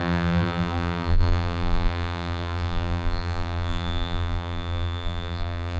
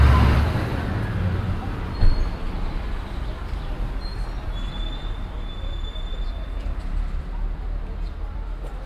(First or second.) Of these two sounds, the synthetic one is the first